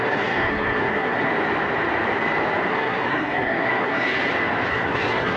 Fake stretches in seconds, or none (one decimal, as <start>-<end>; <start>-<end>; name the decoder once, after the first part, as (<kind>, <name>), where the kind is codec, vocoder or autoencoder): 0.0-1.3 (codec, SNAC); 2.7-4.1; 4.7-5.4

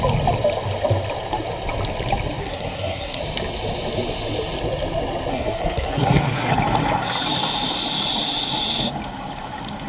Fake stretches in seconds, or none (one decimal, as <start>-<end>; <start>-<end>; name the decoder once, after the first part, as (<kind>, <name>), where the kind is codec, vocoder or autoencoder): 2.4-3.2 (codec, SNAC); 5.3-6.5

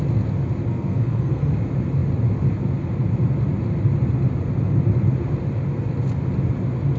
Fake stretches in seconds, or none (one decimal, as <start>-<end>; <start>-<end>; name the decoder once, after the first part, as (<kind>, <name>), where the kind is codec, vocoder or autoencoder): 0.7-1.5 (codec, SNAC)

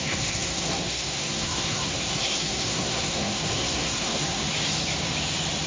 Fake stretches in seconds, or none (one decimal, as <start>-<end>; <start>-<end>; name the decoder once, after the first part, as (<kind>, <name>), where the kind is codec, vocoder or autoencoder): 0.0-4.4 (codec, SNAC)